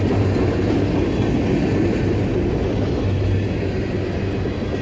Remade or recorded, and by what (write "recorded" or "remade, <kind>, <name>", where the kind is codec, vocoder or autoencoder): recorded